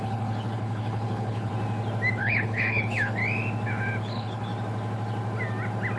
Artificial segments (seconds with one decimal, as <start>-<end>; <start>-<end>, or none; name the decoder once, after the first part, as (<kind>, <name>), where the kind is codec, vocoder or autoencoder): 0.0-1.5 (codec, HILCodec); 2.2-3.2; 4.0-4.5